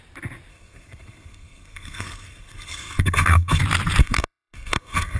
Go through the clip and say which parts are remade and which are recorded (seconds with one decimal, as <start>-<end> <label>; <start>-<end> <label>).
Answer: 0.0-0.5 recorded; 0.5-3.6 remade; 3.6-4.0 recorded; 4.0-5.2 remade